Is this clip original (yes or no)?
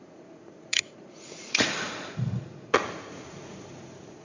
no